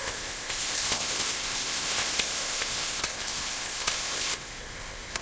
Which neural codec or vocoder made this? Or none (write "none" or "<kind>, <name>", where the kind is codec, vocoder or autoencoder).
codec, ZipCodec